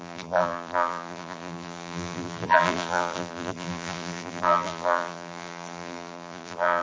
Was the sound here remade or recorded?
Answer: remade